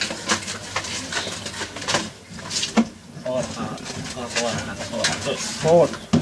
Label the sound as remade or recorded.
recorded